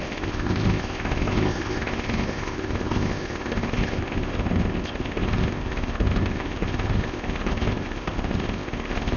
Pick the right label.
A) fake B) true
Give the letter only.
A